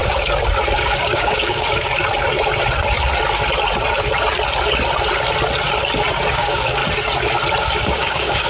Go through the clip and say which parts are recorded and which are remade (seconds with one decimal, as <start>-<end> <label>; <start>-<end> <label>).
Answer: 0.0-0.8 recorded; 0.8-1.9 remade; 1.9-6.3 recorded; 6.3-6.8 remade; 6.8-7.6 recorded; 7.6-8.5 remade